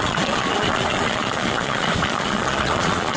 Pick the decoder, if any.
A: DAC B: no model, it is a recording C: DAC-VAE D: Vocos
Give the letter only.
D